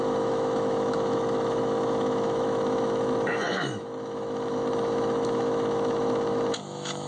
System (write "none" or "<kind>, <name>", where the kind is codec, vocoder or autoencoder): autoencoder, DAC-VAE